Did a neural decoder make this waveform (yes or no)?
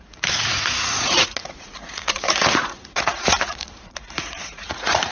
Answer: yes